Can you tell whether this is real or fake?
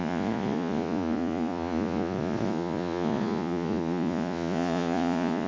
fake